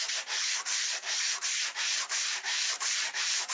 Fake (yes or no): yes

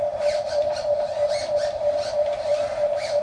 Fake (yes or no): yes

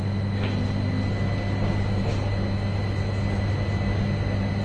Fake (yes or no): no